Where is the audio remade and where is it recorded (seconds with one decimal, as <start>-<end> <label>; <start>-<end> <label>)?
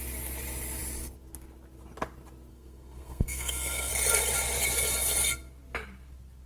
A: 0.0-2.5 recorded; 2.5-3.9 remade; 3.9-6.5 recorded